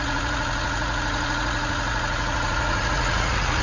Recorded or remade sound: remade